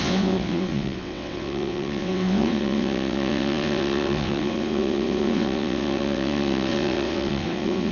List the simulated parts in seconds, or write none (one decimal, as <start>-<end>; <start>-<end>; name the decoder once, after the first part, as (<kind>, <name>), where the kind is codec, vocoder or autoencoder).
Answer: 0.0-7.9 (vocoder, WaveNeXt)

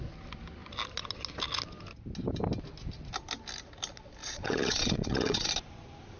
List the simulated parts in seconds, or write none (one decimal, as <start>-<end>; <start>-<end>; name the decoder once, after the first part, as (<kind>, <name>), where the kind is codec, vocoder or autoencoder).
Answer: 4.2-5.5 (vocoder, WaveNeXt)

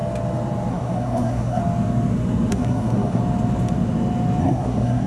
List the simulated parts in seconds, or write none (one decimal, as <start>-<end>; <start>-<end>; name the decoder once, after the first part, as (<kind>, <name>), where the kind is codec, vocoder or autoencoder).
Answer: 0.7-1.6 (codec, SNAC); 2.5-3.2; 4.4-5.1

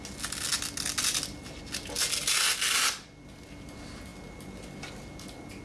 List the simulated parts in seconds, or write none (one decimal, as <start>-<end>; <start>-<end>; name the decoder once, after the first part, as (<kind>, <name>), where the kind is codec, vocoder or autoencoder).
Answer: none

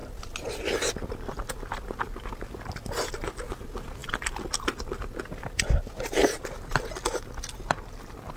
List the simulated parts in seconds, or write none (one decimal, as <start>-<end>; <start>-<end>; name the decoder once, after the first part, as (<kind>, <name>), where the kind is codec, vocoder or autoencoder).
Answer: 0.0-0.9 (vocoder, BigVGAN v2); 6.2-6.8

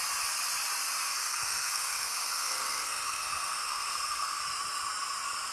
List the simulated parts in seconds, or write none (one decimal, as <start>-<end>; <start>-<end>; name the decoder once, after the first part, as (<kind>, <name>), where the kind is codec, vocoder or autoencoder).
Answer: 1.1-4.4 (codec, SNAC)

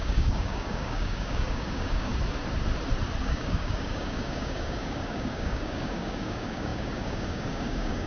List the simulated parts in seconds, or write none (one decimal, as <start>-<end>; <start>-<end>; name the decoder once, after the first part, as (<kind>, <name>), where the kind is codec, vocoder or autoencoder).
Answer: 0.0-2.1 (codec, DAC); 3.2-8.1

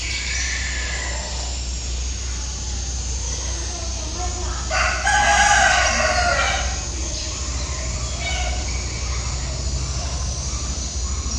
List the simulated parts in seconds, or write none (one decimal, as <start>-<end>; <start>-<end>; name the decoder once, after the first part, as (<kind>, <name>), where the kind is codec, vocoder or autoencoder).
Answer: none